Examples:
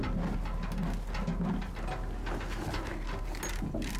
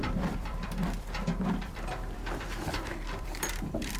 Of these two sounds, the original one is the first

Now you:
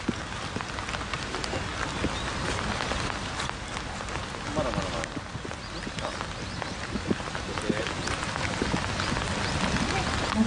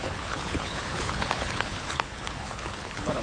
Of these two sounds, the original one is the first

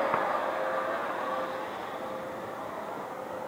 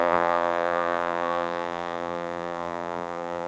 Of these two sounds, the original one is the first